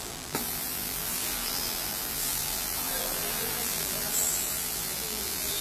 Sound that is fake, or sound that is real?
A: fake